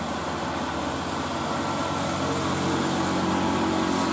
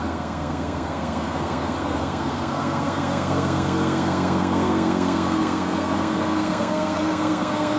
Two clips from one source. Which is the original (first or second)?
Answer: first